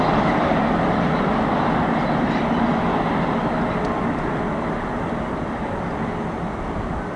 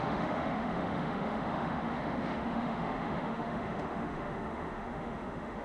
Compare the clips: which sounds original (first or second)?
first